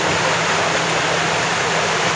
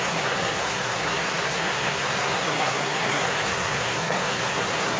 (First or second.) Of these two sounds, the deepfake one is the second